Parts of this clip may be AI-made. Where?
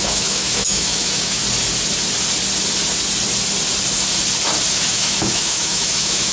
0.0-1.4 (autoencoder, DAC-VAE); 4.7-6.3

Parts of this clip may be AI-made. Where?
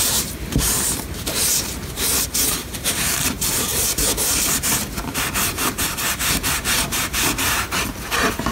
0.0-8.5 (vocoder, BigVGAN v2)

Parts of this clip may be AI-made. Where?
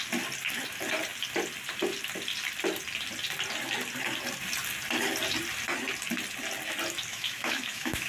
7.1-8.1 (autoencoder, DAC-VAE)